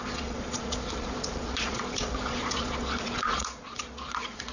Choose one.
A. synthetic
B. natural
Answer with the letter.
A